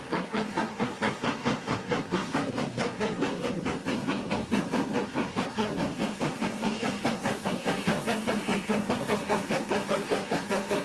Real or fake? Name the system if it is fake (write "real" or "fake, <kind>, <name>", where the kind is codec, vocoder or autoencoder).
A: fake, codec, SNAC